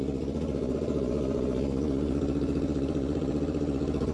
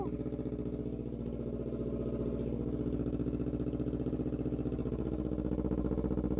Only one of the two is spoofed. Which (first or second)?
first